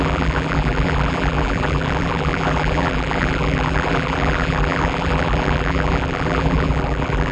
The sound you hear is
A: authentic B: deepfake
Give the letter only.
B